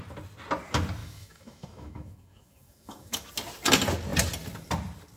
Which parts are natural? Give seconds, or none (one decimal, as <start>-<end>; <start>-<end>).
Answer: 0.0-1.0; 3.3-5.2